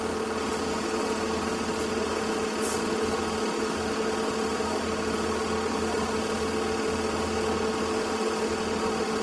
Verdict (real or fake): real